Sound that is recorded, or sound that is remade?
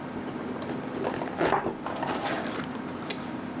recorded